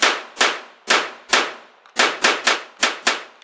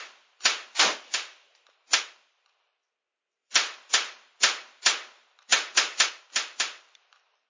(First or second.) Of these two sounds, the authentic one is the first